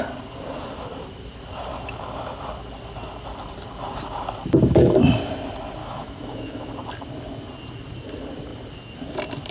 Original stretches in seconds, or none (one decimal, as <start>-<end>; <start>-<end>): 0.0-5.8; 6.7-9.5